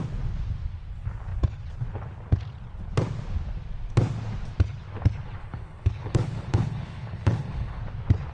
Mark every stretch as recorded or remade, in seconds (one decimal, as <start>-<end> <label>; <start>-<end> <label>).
0.0-5.4 recorded; 5.4-7.8 remade; 7.8-8.3 recorded